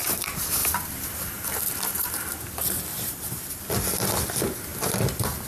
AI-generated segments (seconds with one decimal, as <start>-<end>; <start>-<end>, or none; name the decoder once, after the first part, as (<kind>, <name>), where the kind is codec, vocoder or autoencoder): 2.9-3.6 (vocoder, BigVGAN v2)